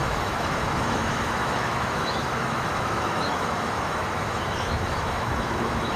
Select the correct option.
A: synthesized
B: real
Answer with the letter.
A